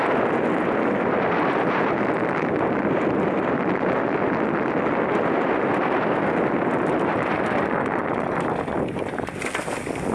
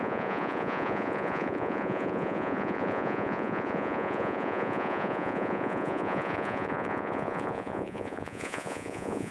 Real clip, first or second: first